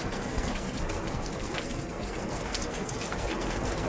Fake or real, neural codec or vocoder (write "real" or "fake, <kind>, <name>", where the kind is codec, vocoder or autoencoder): fake, codec, SNAC